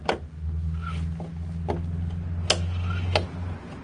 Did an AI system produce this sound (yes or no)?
no